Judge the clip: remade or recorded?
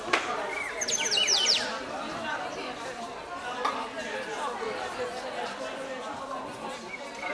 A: recorded